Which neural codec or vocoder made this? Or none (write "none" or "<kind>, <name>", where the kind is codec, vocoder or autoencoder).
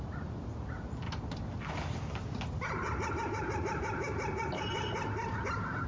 none